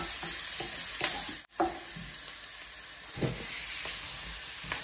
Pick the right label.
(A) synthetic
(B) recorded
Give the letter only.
B